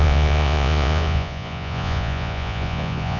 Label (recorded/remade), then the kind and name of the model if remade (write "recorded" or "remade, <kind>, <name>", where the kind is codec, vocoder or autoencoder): remade, vocoder, Vocos